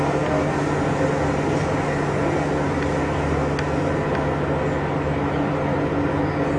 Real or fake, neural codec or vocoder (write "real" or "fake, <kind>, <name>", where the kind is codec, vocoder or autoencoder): real